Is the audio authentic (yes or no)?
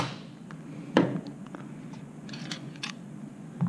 no